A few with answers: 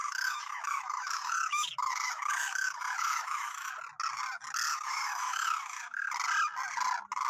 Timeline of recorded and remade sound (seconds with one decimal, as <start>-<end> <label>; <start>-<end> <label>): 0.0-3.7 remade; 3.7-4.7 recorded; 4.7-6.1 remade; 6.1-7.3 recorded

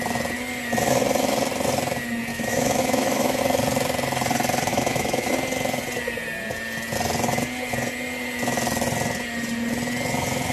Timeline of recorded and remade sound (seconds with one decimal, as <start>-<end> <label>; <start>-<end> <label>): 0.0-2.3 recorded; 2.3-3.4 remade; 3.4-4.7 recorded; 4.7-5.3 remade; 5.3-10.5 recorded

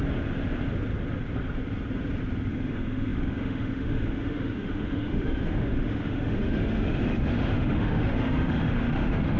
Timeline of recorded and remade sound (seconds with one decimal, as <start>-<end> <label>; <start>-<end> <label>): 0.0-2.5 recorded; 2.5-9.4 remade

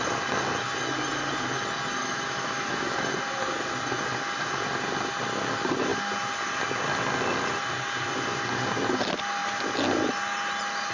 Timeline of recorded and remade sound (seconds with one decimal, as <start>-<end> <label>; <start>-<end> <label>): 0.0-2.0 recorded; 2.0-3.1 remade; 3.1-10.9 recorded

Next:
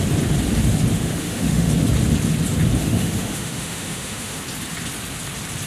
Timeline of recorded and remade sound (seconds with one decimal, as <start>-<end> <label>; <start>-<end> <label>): 0.0-0.9 recorded; 0.9-1.7 remade; 1.7-2.8 recorded; 2.8-4.4 remade; 4.4-5.7 recorded

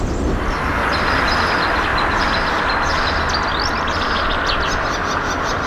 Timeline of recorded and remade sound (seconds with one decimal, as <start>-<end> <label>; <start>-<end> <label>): 0.0-5.7 recorded

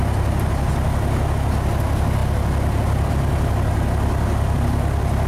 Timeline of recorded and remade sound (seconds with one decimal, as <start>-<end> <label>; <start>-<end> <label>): 0.0-5.3 recorded